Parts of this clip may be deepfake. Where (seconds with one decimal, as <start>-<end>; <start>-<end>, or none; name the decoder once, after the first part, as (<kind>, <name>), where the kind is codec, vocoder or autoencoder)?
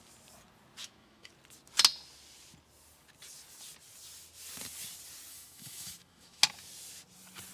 0.8-1.3 (autoencoder, DAC-VAE); 5.3-6.4